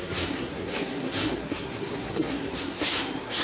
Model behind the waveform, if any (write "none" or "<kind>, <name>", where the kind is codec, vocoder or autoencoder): codec, SNAC